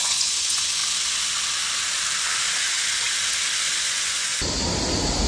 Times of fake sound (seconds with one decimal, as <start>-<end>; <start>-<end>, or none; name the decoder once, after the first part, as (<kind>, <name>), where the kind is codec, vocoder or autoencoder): 0.0-0.8 (vocoder, Vocos); 3.8-4.3